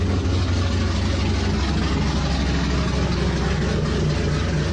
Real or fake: real